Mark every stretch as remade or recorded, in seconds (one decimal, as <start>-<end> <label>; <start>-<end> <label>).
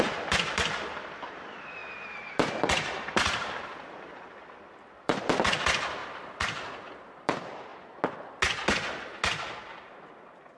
0.0-1.8 remade; 1.8-2.7 recorded; 2.7-6.0 remade; 6.0-6.9 recorded; 6.9-7.7 remade; 7.7-10.2 recorded; 10.2-10.6 remade